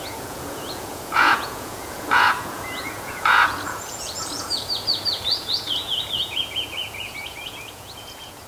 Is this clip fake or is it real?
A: fake